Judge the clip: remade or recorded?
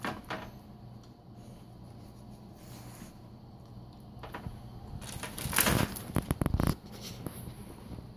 recorded